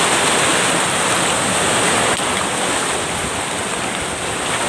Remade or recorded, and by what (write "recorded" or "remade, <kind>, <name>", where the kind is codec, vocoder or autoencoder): recorded